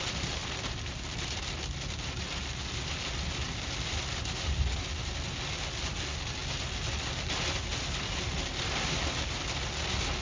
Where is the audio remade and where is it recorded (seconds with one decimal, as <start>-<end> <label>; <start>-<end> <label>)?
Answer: 0.0-10.2 recorded